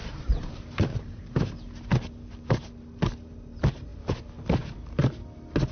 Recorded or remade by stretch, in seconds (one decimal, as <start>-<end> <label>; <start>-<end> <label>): 0.0-1.9 remade; 1.9-3.5 recorded; 3.5-3.9 remade; 3.9-5.7 recorded